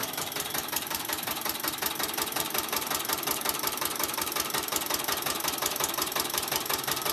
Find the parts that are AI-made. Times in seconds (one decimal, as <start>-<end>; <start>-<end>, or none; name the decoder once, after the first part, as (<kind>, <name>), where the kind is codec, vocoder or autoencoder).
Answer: 0.0-7.1 (vocoder, BigVGAN v2)